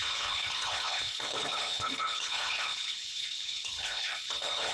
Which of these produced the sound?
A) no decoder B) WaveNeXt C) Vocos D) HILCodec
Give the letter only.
D